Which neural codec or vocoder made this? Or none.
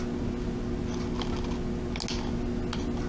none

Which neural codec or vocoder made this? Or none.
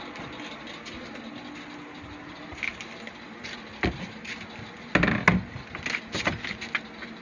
none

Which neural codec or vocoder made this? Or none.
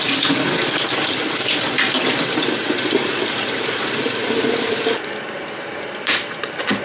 vocoder, BigVGAN v2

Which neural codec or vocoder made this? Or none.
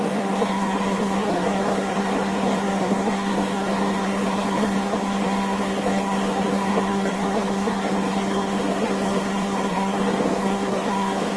codec, SNAC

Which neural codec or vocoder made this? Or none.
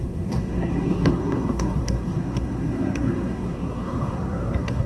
codec, SNAC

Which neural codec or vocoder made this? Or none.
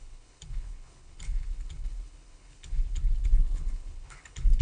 codec, HILCodec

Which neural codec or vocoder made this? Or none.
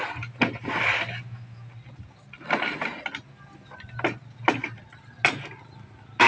none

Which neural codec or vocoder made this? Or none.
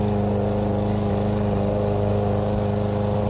none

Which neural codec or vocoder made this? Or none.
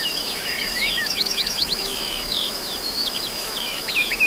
autoencoder, DAC-VAE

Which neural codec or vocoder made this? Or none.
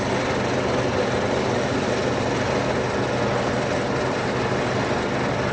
none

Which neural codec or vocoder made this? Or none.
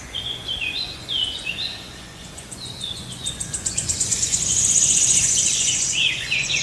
vocoder, Vocos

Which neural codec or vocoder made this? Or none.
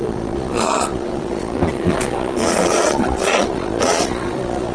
vocoder, Vocos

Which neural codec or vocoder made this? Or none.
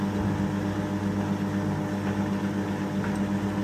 none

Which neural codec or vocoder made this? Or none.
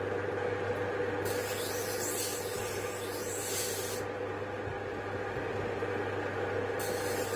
none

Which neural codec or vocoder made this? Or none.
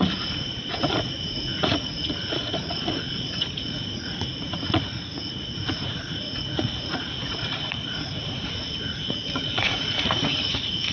vocoder, Vocos